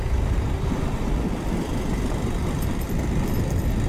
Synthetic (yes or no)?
no